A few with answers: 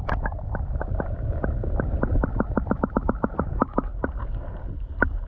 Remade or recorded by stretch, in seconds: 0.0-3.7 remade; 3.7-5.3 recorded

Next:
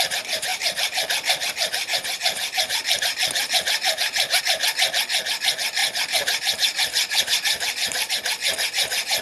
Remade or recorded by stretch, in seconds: 0.0-0.5 recorded; 0.5-4.4 remade; 4.4-5.8 recorded; 5.8-8.1 remade; 8.1-9.2 recorded

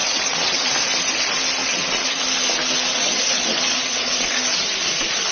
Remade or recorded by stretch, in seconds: 0.0-0.9 remade; 0.9-1.6 recorded; 1.6-2.2 remade; 2.2-2.9 recorded; 2.9-4.4 remade; 4.4-5.3 recorded

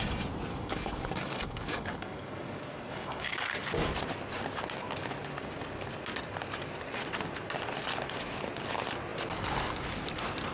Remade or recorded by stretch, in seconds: 0.0-0.5 recorded; 0.5-3.9 remade; 3.9-10.5 recorded

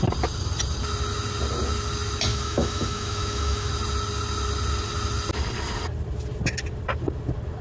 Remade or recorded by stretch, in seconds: 0.0-2.3 recorded; 2.3-3.7 remade; 3.7-7.6 recorded